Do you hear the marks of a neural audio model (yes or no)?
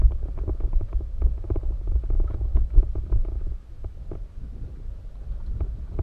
no